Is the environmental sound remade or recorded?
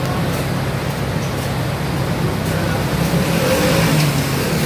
recorded